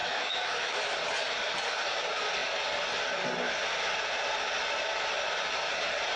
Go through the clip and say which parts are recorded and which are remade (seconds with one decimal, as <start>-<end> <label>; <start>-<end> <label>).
0.0-0.8 remade; 0.8-6.2 recorded